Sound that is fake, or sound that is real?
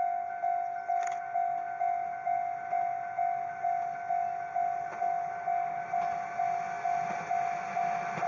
real